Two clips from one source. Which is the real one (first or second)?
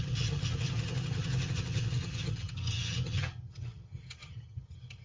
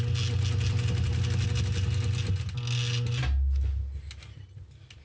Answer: second